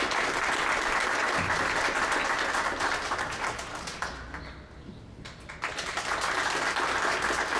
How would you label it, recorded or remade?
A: recorded